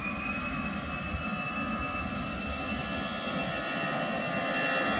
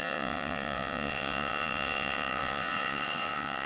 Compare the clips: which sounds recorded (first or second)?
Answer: first